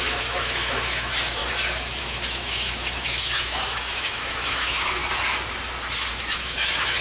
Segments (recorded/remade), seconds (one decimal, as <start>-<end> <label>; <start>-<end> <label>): 0.0-1.4 remade; 1.4-2.0 recorded; 2.0-5.0 remade; 5.0-6.1 recorded; 6.1-7.0 remade